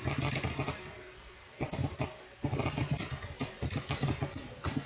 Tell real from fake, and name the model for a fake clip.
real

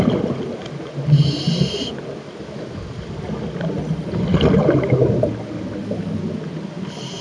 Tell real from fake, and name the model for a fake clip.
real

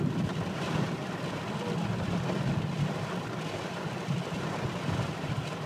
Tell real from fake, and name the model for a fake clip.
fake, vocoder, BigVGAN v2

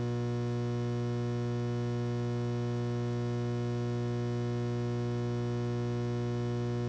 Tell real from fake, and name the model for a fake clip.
real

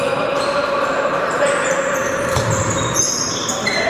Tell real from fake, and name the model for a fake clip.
fake, vocoder, BigVGAN v2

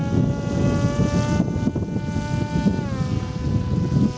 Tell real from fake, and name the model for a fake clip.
real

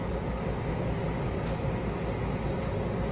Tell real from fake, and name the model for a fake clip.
real